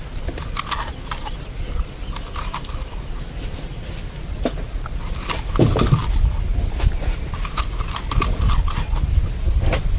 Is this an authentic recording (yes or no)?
yes